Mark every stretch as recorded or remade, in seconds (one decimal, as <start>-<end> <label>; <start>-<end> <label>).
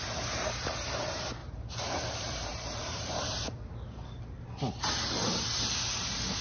0.0-1.4 recorded; 1.4-4.4 remade; 4.4-6.4 recorded